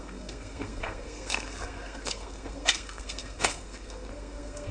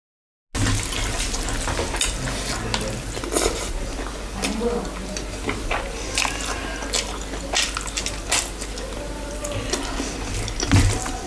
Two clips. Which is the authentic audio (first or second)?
second